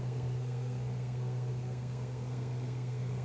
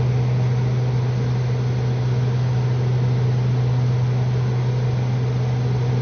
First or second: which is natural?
second